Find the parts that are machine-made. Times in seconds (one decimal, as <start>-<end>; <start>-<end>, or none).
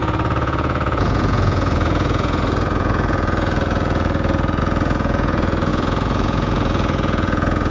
0.0-7.7